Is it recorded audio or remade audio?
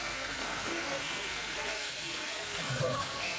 remade